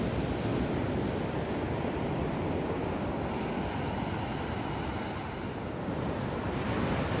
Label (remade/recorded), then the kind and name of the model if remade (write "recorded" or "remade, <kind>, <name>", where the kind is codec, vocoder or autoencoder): recorded